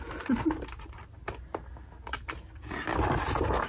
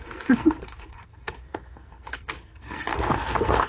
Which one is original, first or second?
first